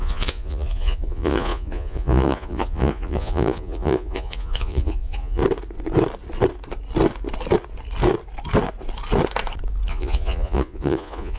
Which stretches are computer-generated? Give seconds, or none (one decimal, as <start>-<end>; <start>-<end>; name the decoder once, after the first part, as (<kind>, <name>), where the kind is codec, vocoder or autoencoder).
0.0-5.4 (vocoder, Vocos); 9.9-11.4